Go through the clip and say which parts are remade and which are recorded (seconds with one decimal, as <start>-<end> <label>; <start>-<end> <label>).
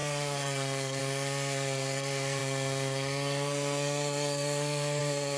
0.0-5.4 remade